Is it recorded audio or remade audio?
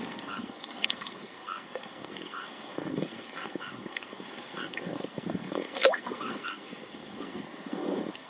remade